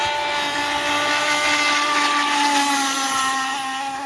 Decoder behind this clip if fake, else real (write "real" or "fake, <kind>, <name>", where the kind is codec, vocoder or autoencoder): real